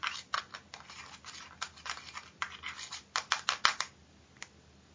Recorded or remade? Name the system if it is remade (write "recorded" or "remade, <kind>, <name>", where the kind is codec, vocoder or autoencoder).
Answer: recorded